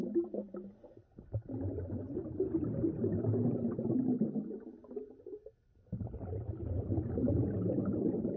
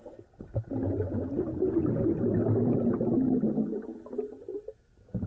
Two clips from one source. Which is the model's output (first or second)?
first